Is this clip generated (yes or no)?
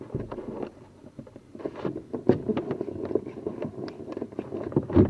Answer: yes